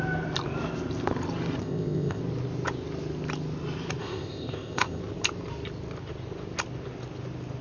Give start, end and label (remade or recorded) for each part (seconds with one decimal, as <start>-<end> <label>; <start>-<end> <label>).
0.0-1.6 recorded; 1.6-2.2 remade; 2.2-4.0 recorded; 4.0-5.0 remade; 5.0-7.6 recorded